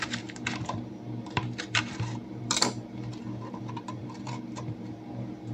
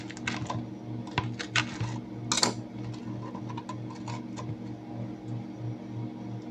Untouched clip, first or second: second